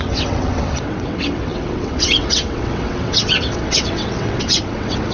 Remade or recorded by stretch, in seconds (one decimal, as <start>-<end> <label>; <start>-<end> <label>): 0.0-5.1 remade